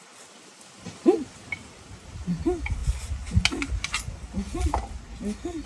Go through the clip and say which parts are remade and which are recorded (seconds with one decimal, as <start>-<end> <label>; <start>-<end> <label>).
0.0-5.7 recorded